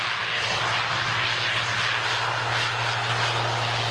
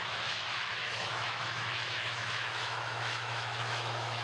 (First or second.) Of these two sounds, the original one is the first